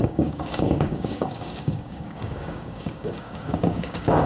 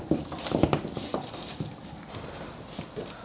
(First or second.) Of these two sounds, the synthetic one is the first